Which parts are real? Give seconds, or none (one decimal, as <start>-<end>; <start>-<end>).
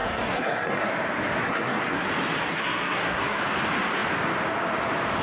0.9-1.4; 2.1-2.5; 3.4-5.2